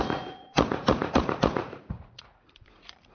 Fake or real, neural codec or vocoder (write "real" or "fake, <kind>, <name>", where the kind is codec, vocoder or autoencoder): fake, vocoder, Vocos